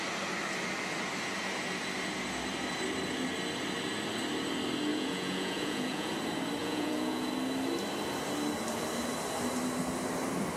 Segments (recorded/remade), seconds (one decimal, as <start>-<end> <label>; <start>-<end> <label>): 0.0-4.9 recorded; 4.9-6.1 remade; 6.1-6.6 recorded; 6.6-7.3 remade; 7.3-10.6 recorded